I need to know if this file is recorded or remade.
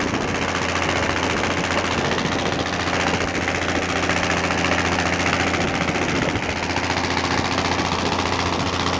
recorded